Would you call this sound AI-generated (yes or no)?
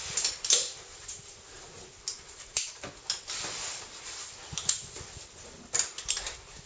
no